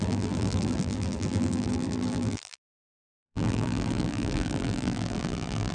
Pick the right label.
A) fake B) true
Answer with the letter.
A